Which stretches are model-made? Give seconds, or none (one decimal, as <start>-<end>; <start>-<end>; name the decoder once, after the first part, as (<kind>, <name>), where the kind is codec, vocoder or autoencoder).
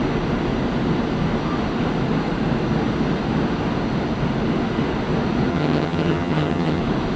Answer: 5.5-6.8 (vocoder, HiFi-GAN)